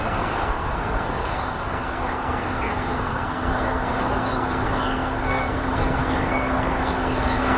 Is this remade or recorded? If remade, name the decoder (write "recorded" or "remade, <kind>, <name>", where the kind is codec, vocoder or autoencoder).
remade, codec, SNAC